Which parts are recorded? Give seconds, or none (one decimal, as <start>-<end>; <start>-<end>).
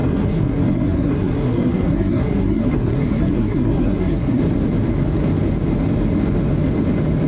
4.4-7.3